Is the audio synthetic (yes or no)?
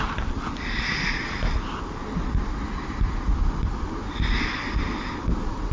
no